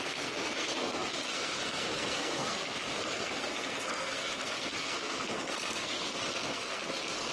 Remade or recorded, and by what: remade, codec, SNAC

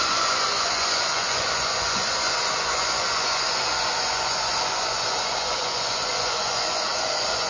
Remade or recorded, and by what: remade, vocoder, Vocos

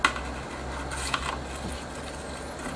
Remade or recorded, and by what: recorded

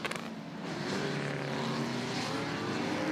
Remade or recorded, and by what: recorded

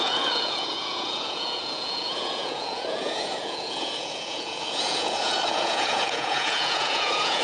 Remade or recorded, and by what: remade, vocoder, Vocos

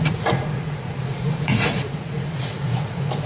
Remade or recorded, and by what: remade, vocoder, Vocos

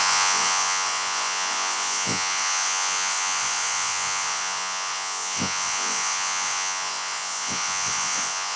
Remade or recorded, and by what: remade, vocoder, Vocos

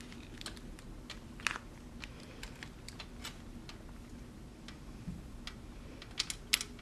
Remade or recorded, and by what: recorded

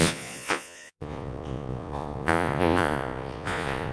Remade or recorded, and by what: remade, vocoder, Vocos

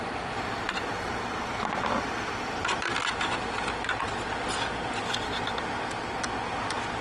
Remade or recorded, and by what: recorded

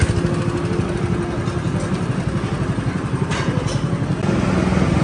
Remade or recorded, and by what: recorded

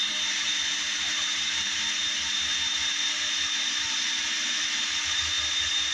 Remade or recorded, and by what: remade, vocoder, BigVGAN v2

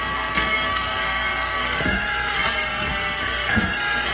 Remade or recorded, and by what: remade, codec, SNAC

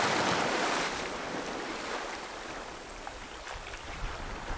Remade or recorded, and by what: remade, vocoder, BigVGAN v2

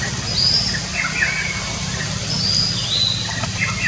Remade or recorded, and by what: recorded